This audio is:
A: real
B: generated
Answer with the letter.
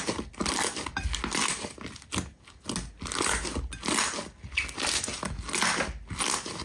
A